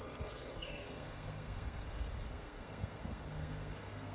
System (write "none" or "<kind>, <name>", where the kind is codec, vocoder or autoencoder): codec, SNAC